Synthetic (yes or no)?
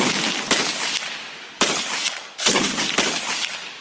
no